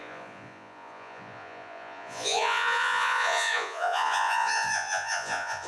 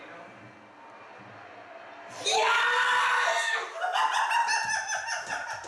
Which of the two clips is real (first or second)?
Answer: second